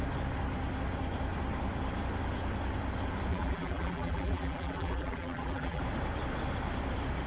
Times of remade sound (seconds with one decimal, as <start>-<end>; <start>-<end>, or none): 3.3-5.8